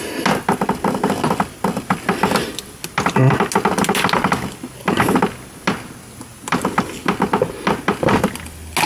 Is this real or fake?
real